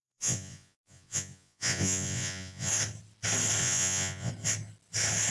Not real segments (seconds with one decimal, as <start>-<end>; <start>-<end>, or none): 0.0-2.7; 3.6-4.3